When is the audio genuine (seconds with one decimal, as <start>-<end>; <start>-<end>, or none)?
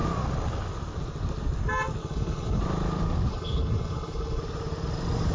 0.0-2.0; 2.6-3.3; 4.4-5.3